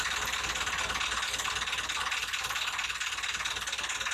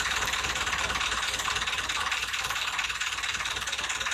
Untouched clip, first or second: first